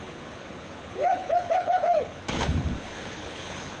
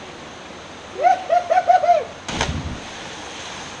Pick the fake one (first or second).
first